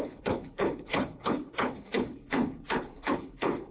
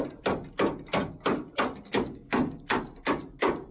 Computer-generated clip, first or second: first